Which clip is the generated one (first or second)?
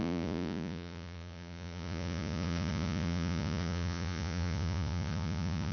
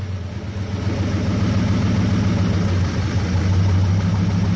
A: first